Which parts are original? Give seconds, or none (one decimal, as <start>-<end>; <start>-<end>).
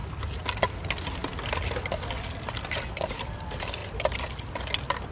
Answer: 0.0-3.1; 3.8-5.1